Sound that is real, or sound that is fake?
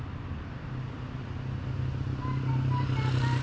real